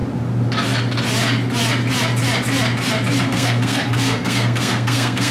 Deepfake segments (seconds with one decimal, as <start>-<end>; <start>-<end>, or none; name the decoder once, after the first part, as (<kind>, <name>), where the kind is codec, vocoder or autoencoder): 3.2-5.3 (codec, SNAC)